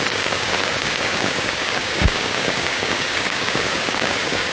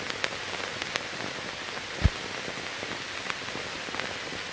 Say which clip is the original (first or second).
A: second